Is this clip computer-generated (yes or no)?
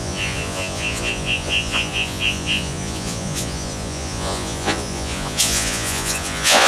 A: yes